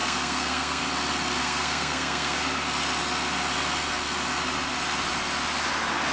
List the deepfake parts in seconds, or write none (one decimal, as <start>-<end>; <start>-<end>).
0.0-0.8; 1.4-2.4